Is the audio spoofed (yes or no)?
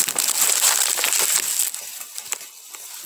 no